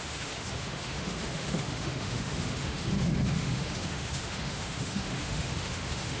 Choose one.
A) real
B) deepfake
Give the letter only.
B